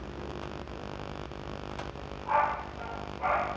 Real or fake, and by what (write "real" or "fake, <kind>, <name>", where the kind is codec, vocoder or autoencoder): real